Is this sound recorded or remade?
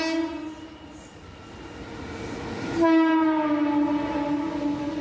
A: recorded